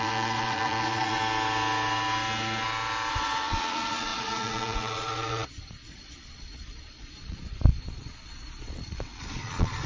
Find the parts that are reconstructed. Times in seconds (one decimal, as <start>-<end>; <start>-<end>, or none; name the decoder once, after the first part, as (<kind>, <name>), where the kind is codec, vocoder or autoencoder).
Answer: 0.0-1.2 (vocoder, Vocos); 3.1-9.9